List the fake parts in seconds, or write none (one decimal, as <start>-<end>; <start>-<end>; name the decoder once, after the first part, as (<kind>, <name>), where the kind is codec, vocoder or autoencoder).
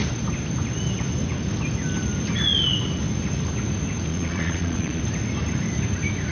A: 4.1-5.0 (vocoder, Vocos)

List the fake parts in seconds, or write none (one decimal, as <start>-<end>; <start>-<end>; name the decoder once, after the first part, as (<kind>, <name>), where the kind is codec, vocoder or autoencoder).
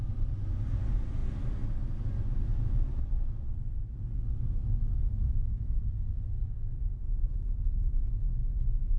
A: none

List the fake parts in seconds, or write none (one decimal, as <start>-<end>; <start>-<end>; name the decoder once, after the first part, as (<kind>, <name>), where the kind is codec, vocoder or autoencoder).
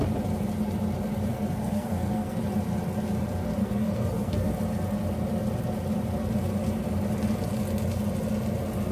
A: 1.3-2.4 (codec, SNAC); 3.6-4.5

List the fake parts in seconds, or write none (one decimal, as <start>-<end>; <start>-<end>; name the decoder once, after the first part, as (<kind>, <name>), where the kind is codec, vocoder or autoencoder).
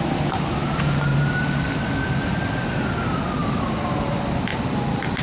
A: 1.1-2.2 (vocoder, BigVGAN v2); 3.4-4.1; 4.5-5.2